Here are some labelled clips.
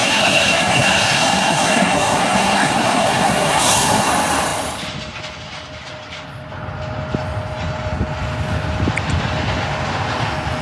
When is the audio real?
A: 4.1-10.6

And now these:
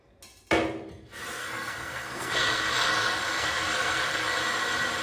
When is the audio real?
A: 0.0-1.4; 4.4-5.0